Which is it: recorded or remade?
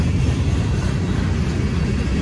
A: recorded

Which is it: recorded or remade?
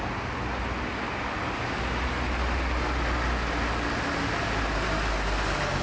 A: recorded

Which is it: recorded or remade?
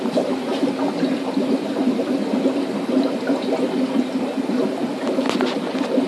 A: recorded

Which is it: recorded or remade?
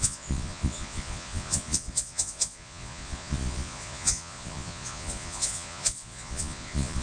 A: remade